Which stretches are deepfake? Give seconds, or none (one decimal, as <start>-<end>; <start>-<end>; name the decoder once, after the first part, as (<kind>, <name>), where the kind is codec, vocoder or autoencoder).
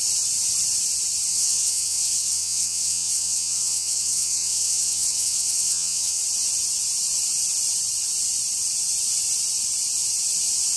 1.3-6.2 (vocoder, WaveNeXt)